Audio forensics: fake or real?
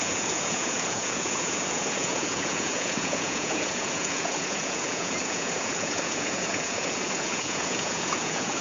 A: fake